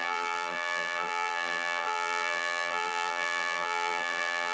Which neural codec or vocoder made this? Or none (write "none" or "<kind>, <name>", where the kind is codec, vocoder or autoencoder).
vocoder, BigVGAN v2